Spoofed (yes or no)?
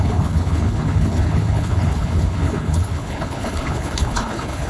yes